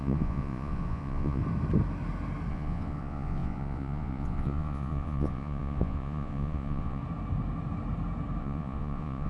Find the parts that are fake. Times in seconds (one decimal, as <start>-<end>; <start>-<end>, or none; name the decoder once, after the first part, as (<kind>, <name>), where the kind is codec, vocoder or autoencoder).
0.0-1.4 (vocoder, Vocos); 2.5-7.0; 8.4-9.3